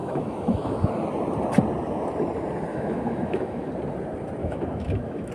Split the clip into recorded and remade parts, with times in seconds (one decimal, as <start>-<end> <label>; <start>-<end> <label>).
0.0-0.9 remade; 0.9-2.7 recorded; 2.7-3.7 remade; 3.7-4.4 recorded; 4.4-5.3 remade